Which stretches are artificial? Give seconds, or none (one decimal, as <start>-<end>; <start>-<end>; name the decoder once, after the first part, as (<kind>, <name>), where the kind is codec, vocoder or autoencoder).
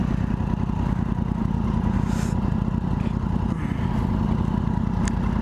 none